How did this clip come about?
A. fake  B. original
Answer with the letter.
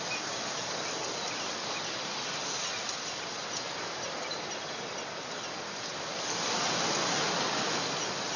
B